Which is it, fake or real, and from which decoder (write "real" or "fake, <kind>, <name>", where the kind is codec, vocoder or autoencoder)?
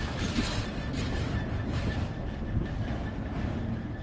real